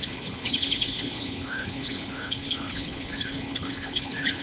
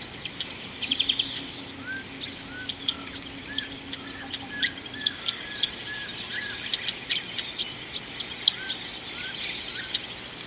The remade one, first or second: first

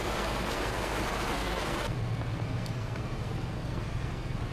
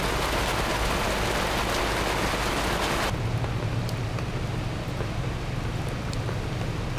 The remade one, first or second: first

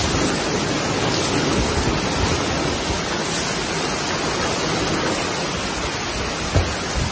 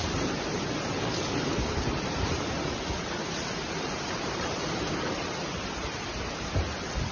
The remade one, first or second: second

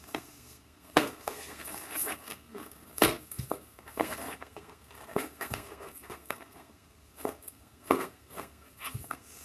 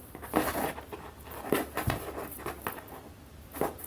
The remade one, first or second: first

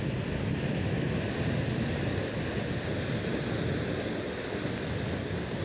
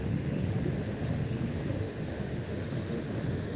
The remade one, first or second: second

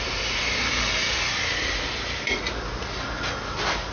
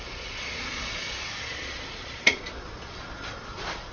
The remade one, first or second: second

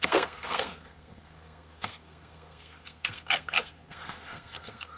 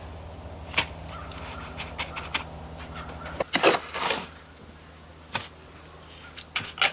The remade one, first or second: first